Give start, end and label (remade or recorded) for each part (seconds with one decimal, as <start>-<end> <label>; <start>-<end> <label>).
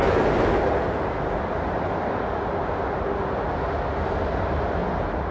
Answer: 0.0-5.3 recorded